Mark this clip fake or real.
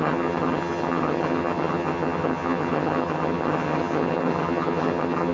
fake